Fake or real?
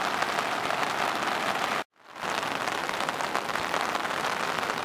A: real